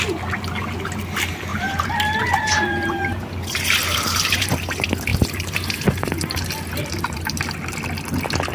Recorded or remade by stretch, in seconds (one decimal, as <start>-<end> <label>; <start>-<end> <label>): 0.0-1.5 recorded; 1.5-4.5 remade; 4.5-5.1 recorded; 5.1-7.4 remade; 7.4-8.5 recorded